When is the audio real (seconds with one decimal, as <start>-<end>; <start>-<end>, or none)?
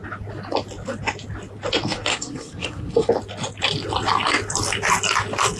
0.0-2.1; 3.1-5.6